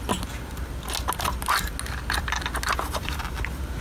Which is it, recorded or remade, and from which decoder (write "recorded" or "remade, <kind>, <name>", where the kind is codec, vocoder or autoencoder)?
recorded